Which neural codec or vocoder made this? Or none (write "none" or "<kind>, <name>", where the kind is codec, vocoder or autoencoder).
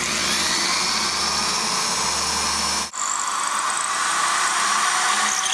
none